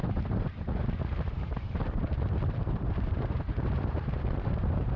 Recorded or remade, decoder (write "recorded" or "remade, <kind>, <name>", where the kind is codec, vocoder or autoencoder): remade, vocoder, BigVGAN v2